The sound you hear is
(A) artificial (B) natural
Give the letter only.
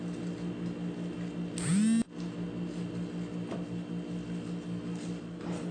B